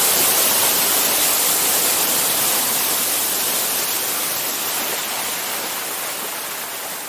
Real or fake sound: real